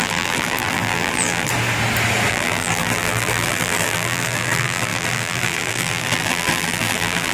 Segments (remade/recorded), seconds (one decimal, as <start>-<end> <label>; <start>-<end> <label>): 0.0-1.5 remade; 1.5-2.3 recorded; 2.3-7.3 remade